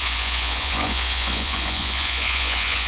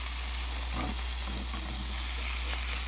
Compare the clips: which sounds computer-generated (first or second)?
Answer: first